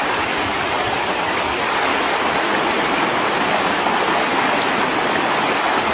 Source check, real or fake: real